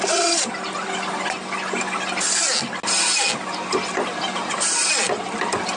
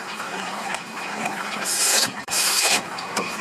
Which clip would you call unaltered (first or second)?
first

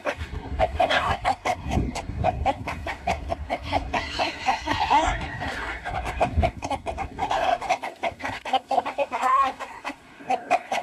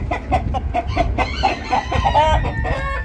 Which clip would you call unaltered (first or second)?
second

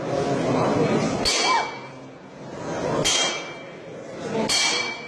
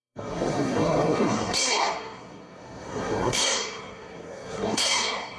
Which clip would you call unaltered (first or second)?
first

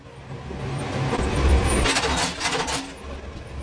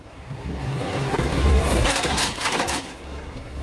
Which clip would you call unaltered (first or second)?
first